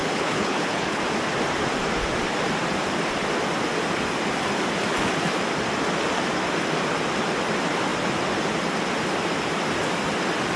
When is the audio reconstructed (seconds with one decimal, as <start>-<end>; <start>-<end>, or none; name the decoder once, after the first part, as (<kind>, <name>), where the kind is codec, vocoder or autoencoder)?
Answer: 0.0-1.0 (codec, HILCodec)